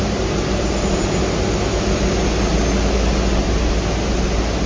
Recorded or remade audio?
recorded